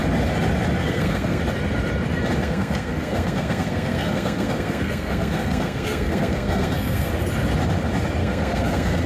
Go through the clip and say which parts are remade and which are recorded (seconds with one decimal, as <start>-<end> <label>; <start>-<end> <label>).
0.0-0.8 recorded; 0.8-1.4 remade; 1.4-2.4 recorded; 2.4-7.1 remade; 7.1-8.2 recorded; 8.2-9.1 remade